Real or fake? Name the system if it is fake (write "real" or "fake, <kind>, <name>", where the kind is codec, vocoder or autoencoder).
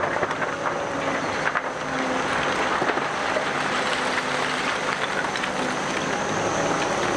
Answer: real